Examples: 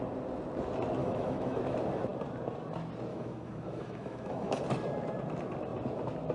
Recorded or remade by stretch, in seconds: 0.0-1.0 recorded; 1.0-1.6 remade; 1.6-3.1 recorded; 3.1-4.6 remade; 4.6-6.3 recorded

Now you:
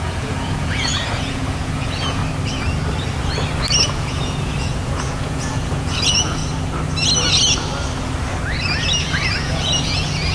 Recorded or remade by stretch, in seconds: 0.0-2.2 remade; 2.2-3.8 recorded; 3.8-6.4 remade; 6.4-9.0 recorded; 9.0-10.3 remade

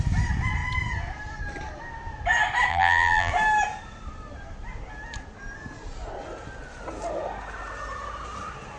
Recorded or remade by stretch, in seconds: 0.0-2.7 recorded; 2.7-3.3 remade; 3.3-8.8 recorded

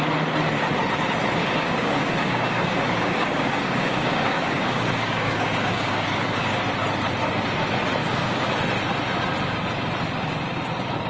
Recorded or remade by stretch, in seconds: 0.0-1.4 recorded; 1.4-6.6 remade; 6.6-8.0 recorded; 8.0-8.5 remade; 8.5-11.1 recorded

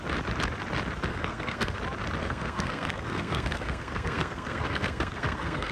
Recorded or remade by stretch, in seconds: 0.0-1.1 recorded; 1.1-1.8 remade; 1.8-2.2 recorded; 2.2-5.7 remade

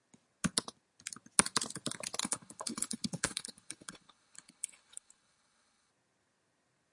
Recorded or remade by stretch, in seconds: 0.0-2.2 recorded; 2.2-5.9 remade; 5.9-6.9 recorded